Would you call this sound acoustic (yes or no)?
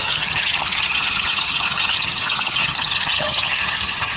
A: no